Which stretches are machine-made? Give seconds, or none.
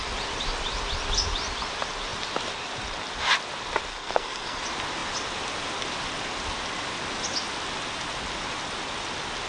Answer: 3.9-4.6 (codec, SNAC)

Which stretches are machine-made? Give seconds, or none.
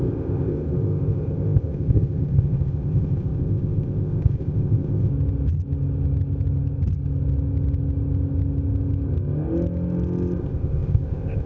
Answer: 0.0-5.1 (codec, ZipCodec); 10.4-11.5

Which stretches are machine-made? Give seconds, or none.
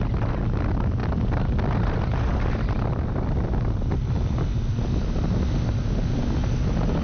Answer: none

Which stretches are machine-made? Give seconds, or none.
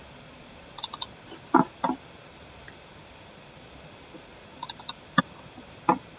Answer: none